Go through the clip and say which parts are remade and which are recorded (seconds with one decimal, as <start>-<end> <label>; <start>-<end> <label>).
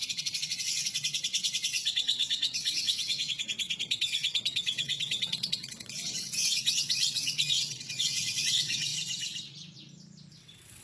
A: 0.0-8.9 remade; 8.9-10.3 recorded; 10.3-10.8 remade